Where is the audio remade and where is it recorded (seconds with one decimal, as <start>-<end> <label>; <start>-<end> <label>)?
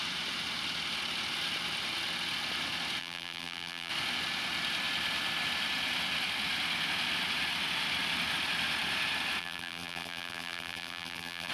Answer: 0.0-3.0 recorded; 3.0-3.9 remade; 3.9-9.4 recorded; 9.4-11.5 remade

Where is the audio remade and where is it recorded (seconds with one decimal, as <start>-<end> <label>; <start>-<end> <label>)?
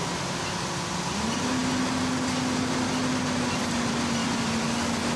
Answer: 0.0-5.2 recorded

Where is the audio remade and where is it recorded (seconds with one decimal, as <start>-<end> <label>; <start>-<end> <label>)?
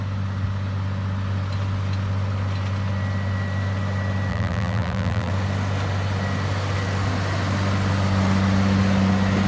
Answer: 0.0-4.3 recorded; 4.3-5.3 remade; 5.3-9.5 recorded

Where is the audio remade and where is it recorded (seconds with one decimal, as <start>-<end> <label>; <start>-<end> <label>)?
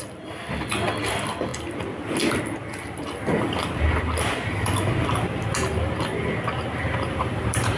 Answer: 0.0-6.8 recorded; 6.8-7.8 remade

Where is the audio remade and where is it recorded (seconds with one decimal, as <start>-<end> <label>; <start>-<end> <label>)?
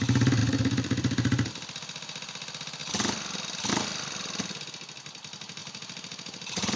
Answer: 0.0-0.4 recorded; 0.4-1.5 remade; 1.5-5.6 recorded; 5.6-6.8 remade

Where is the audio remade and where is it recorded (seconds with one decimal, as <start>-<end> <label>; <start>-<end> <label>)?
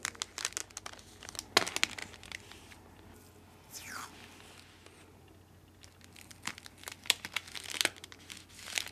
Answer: 0.0-8.9 recorded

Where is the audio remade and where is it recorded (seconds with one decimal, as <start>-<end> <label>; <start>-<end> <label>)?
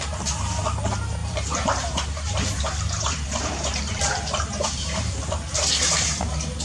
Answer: 0.0-1.2 recorded; 1.2-5.2 remade; 5.2-6.6 recorded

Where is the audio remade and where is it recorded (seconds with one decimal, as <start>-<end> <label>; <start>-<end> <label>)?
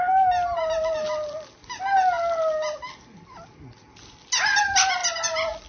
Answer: 0.0-5.7 recorded